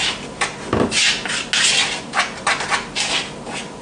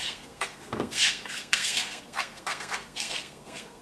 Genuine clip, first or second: first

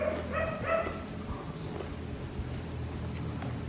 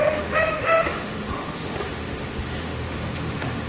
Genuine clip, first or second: first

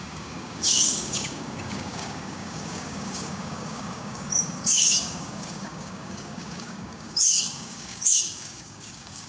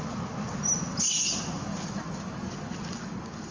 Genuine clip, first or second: second